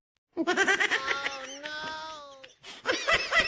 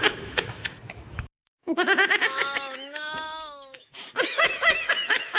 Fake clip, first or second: second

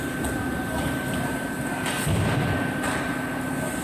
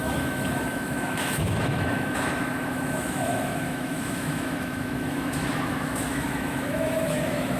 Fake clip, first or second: second